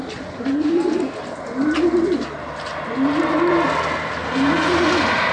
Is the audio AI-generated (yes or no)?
no